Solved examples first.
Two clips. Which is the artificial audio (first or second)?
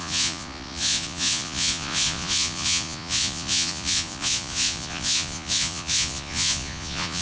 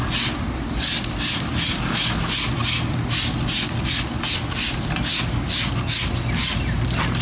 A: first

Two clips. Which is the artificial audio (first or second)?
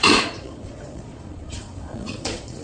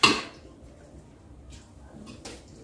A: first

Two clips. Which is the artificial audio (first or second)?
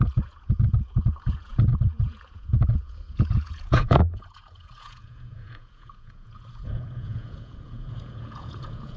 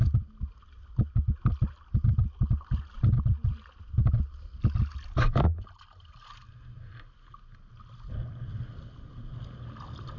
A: first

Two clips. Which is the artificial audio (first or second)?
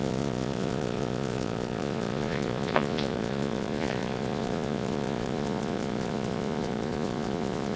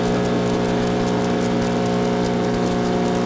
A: first